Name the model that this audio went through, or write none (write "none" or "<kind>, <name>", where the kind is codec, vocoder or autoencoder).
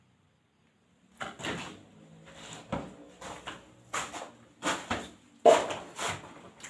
none